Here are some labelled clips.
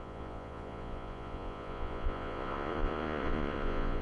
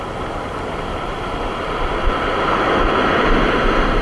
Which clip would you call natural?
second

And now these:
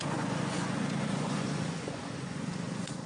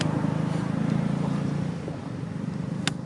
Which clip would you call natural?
second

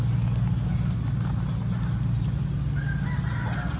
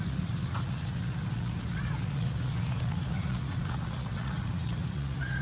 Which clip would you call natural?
first